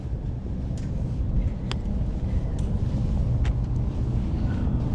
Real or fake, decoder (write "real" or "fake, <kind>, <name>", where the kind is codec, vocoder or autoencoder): real